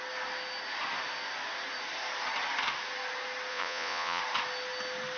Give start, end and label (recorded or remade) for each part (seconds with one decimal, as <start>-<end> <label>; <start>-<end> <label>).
0.0-3.5 recorded; 3.5-4.2 remade; 4.2-5.2 recorded